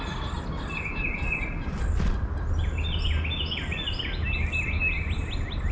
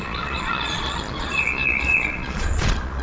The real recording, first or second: first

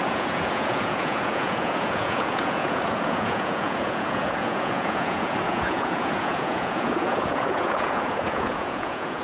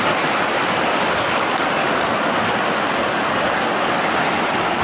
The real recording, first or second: second